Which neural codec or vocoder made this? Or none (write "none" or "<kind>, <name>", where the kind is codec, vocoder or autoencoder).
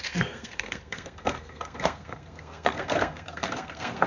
codec, SNAC